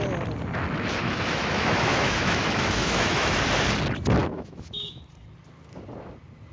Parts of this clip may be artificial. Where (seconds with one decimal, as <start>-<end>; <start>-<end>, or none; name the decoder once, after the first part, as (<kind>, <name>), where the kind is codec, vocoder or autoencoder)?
1.0-3.4 (autoencoder, DAC-VAE); 4.2-5.0